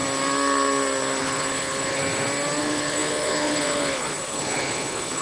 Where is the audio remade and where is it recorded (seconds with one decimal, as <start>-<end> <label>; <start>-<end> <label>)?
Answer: 0.0-1.2 recorded; 1.2-2.0 remade; 2.0-2.6 recorded; 2.6-5.2 remade